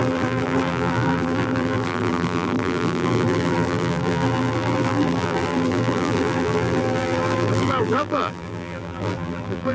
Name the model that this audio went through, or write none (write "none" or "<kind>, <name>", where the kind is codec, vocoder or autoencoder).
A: vocoder, BigVGAN v2